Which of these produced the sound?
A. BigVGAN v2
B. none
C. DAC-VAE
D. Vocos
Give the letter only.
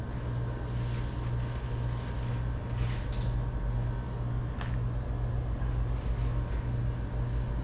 B